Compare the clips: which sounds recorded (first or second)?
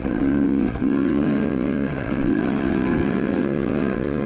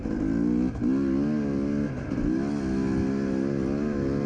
second